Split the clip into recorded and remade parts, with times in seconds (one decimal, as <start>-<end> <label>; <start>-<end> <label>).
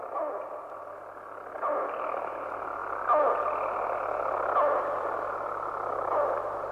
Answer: 0.0-6.7 recorded